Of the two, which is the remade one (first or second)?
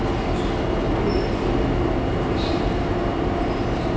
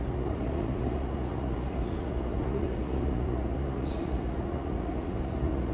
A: second